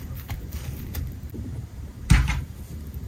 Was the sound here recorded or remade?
remade